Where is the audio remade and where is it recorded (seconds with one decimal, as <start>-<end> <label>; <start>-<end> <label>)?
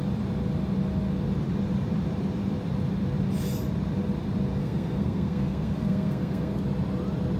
0.0-4.6 recorded; 4.6-6.6 remade; 6.6-7.4 recorded